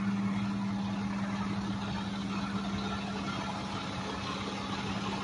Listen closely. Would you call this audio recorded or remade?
recorded